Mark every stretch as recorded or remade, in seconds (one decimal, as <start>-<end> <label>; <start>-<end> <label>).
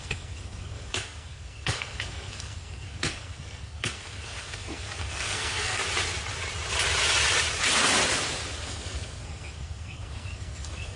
0.0-5.8 remade; 5.8-8.6 recorded; 8.6-11.0 remade